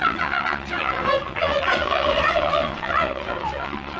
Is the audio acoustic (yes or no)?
no